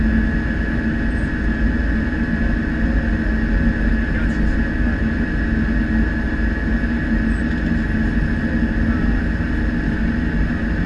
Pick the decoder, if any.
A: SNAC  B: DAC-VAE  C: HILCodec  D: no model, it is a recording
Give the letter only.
D